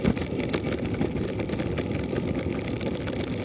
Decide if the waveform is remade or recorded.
recorded